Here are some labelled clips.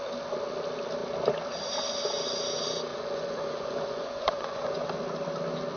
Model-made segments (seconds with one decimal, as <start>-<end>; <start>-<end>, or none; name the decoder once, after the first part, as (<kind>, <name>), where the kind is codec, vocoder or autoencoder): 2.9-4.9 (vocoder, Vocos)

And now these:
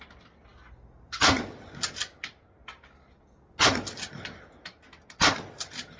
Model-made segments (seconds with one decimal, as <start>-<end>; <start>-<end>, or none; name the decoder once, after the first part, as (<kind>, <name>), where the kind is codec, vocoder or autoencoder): none

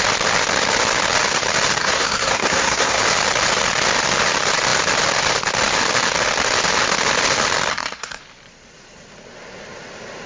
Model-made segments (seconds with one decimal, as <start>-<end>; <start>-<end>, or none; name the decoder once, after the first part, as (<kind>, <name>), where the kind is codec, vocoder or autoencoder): 1.8-3.0 (codec, SNAC); 7.7-8.2

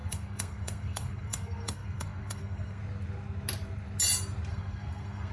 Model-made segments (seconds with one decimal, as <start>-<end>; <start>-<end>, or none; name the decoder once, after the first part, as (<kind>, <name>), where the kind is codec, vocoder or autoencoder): 0.0-2.8 (codec, SNAC); 4.5-5.3